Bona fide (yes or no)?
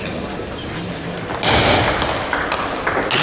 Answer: yes